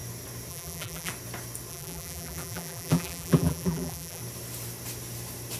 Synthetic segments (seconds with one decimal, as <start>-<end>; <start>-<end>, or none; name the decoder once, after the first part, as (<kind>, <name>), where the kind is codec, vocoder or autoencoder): 0.5-1.1 (vocoder, BigVGAN v2); 1.7-4.2